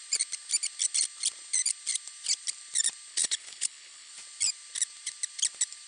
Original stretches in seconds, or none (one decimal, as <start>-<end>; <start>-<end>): 0.0-3.1; 4.1-5.9